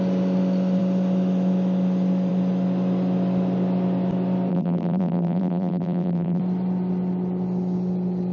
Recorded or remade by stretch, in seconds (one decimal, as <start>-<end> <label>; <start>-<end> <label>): 0.0-4.5 recorded; 4.5-6.4 remade; 6.4-8.3 recorded